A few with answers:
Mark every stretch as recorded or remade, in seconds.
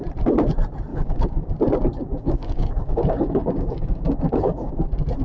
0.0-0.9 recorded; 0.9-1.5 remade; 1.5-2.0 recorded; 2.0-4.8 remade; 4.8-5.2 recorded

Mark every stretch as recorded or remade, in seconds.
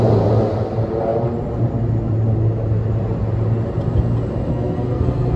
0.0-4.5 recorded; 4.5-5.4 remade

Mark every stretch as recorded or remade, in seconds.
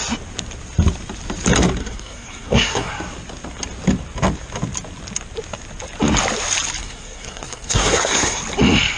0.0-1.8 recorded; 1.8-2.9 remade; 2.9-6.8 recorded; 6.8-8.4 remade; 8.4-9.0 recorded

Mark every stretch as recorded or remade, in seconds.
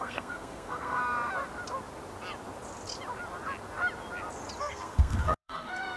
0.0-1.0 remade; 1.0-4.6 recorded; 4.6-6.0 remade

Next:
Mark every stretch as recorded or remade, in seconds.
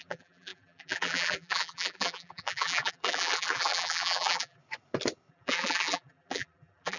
0.0-4.6 remade; 4.6-5.3 recorded; 5.3-7.0 remade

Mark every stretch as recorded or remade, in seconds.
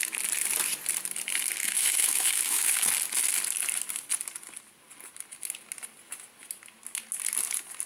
0.0-1.6 recorded; 1.6-2.9 remade; 2.9-7.9 recorded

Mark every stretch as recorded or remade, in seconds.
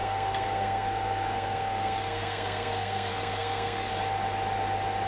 0.0-3.9 remade; 3.9-5.1 recorded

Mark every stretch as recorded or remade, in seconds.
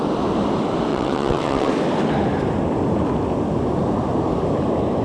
0.0-0.9 recorded; 0.9-1.7 remade; 1.7-5.0 recorded